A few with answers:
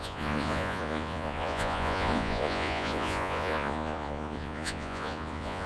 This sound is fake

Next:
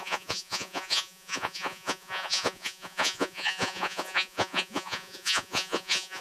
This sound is fake